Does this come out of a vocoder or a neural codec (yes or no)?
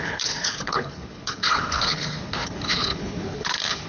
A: yes